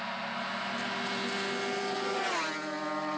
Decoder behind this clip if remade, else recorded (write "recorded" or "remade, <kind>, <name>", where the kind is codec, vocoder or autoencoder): recorded